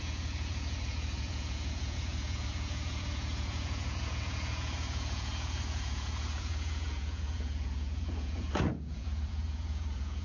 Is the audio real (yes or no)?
no